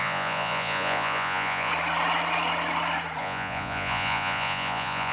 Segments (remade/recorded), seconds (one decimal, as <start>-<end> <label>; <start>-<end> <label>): 0.0-1.7 remade; 1.7-3.2 recorded; 3.2-5.1 remade